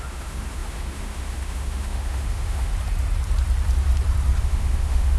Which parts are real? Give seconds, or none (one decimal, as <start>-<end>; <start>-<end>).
2.7-4.4